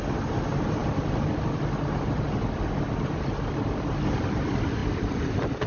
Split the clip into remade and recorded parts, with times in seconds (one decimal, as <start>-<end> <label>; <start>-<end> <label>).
0.0-5.7 recorded